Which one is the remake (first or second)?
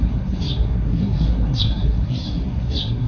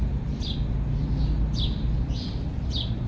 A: first